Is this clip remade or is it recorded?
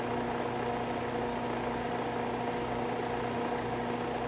recorded